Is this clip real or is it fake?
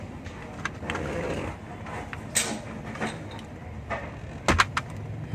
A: real